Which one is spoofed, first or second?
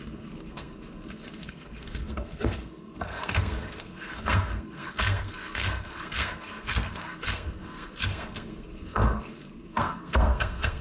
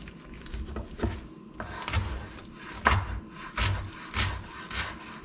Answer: first